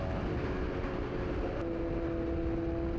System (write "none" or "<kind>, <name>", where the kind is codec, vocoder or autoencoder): none